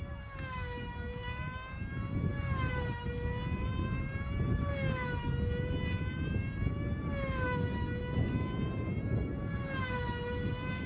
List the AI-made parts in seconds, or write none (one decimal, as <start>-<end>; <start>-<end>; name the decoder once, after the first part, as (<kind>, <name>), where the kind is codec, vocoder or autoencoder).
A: none